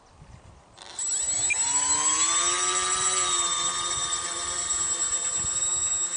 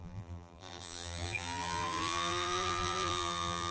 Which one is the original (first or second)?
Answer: first